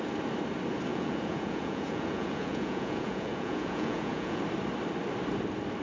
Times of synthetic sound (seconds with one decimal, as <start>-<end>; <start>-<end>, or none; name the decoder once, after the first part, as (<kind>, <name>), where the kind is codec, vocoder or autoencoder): 0.9-4.4 (vocoder, Vocos)

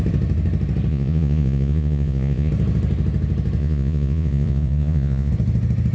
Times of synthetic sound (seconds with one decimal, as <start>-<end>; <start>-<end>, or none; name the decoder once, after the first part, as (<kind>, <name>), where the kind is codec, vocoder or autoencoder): 0.9-2.5 (vocoder, Vocos); 3.6-5.3

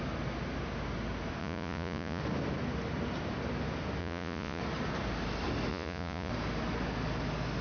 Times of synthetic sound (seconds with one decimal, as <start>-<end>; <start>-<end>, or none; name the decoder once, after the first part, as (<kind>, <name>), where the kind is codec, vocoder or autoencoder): 1.4-2.2 (vocoder, Vocos); 4.0-4.6; 5.7-6.3

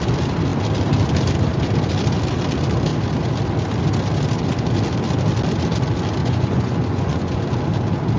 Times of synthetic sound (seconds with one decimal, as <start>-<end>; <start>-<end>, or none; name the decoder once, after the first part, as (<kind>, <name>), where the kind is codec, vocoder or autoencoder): 6.2-7.4 (vocoder, Vocos)

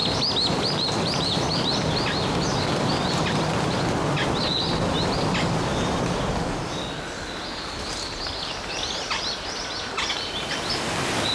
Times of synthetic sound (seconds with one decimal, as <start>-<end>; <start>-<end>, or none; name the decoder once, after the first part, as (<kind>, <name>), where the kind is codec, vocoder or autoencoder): none

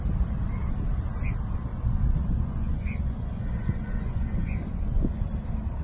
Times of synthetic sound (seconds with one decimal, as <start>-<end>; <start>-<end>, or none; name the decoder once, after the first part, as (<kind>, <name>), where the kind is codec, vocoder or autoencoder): 1.7-5.2 (vocoder, Vocos)

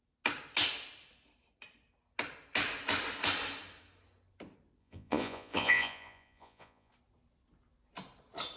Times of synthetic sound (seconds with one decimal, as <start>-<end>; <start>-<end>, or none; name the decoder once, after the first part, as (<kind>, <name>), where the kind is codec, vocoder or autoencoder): 4.8-6.9 (vocoder, Vocos)